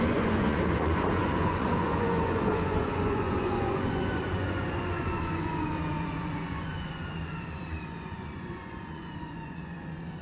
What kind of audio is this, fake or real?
fake